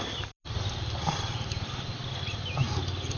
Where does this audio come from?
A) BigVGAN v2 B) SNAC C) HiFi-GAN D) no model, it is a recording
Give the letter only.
D